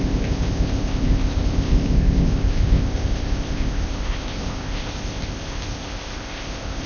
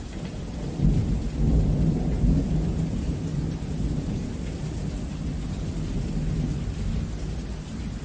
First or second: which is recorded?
second